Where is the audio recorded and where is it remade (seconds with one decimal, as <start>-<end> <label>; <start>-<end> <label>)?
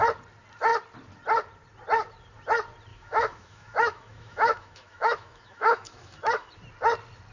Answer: 0.0-2.9 recorded; 2.9-6.5 remade; 6.5-7.3 recorded